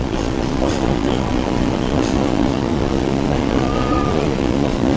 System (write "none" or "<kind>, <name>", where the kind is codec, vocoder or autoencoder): vocoder, Vocos